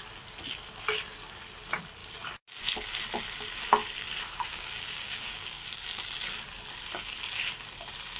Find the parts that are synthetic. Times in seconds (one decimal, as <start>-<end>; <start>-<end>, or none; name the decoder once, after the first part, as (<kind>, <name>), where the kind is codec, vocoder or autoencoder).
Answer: 4.5-5.7 (codec, DAC)